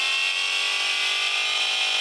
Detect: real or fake real